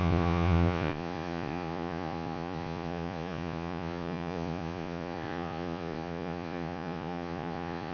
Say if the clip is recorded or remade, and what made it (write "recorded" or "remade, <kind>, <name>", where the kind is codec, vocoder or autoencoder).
remade, vocoder, Vocos